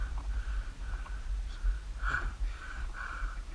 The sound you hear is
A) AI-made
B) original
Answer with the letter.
A